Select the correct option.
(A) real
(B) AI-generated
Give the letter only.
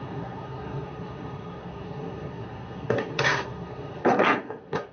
B